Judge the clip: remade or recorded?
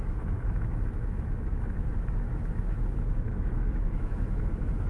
remade